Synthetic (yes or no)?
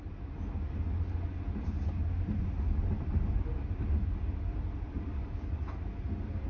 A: no